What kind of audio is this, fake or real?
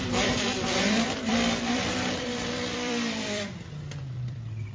fake